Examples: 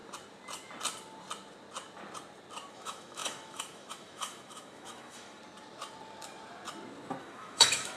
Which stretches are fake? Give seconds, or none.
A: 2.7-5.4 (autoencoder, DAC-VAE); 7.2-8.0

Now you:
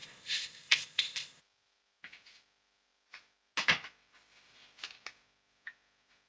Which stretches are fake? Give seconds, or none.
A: 0.0-1.4 (codec, ZipCodec)

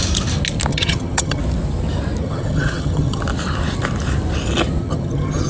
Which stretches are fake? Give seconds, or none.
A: 0.7-1.4 (vocoder, HiFi-GAN); 2.2-3.2; 4.8-5.5

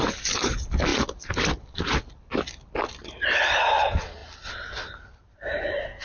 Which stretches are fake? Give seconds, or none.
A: 0.9-3.8 (vocoder, BigVGAN v2); 4.2-6.0

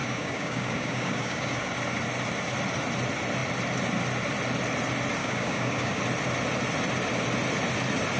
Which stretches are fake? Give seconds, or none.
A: 0.0-1.7 (codec, DAC); 5.2-6.0

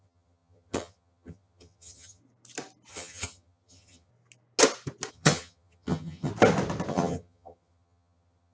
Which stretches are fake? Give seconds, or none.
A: 0.0-2.2 (vocoder, HiFi-GAN); 2.9-4.1; 5.1-6.3; 6.9-8.5

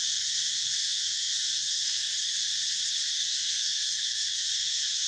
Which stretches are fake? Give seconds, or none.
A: 0.0-2.4 (codec, SNAC); 3.1-5.1